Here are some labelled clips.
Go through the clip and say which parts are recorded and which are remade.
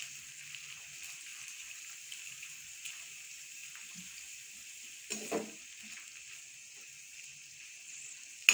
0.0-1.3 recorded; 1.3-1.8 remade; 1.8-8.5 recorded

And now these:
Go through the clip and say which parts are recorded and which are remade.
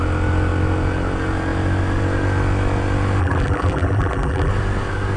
0.0-3.2 recorded; 3.2-4.5 remade; 4.5-5.2 recorded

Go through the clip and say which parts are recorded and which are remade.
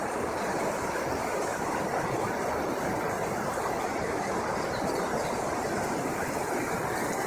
0.0-1.3 recorded; 1.3-2.0 remade; 2.0-7.3 recorded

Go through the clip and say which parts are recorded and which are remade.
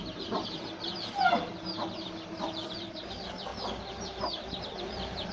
0.0-1.5 remade; 1.5-2.3 recorded; 2.3-3.5 remade; 3.5-4.6 recorded; 4.6-5.3 remade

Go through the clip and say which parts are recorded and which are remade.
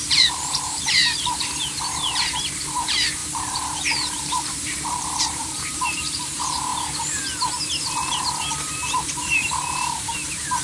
0.0-6.7 remade; 6.7-8.5 recorded; 8.5-10.6 remade